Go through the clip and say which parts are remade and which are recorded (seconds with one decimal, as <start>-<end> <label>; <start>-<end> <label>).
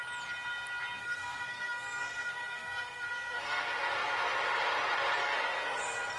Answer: 0.0-1.0 recorded; 1.0-3.6 remade; 3.6-5.2 recorded; 5.2-5.8 remade; 5.8-6.2 recorded